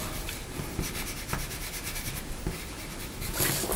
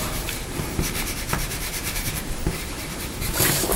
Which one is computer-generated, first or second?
second